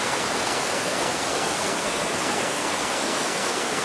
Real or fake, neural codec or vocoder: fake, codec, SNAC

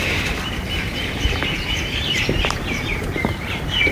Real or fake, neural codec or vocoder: fake, vocoder, BigVGAN v2